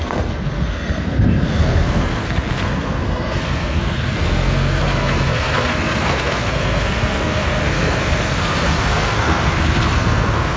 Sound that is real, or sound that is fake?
fake